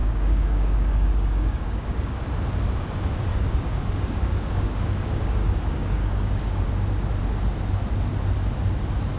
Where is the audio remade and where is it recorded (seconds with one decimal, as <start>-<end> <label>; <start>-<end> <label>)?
0.0-2.2 remade; 2.2-3.3 recorded; 3.3-6.7 remade; 6.7-9.2 recorded